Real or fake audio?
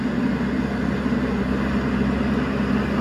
real